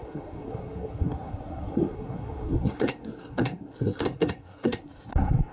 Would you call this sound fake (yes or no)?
yes